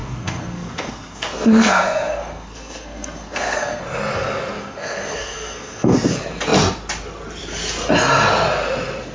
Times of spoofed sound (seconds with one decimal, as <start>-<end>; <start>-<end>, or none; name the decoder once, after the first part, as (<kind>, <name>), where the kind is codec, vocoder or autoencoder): 0.0-3.8 (codec, SNAC); 4.6-6.1